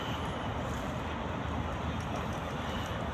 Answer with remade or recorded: recorded